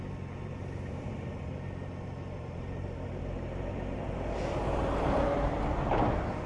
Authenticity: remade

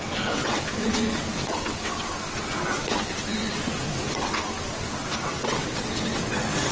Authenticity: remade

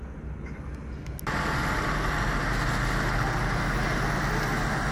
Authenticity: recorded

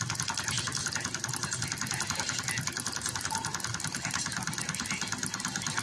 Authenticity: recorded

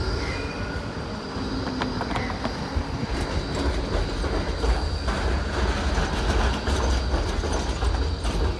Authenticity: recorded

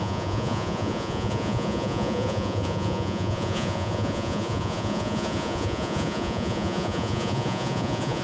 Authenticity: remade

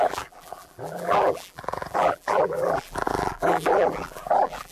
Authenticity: remade